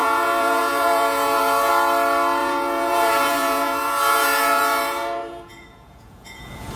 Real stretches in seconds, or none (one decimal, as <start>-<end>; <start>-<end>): 1.7-2.4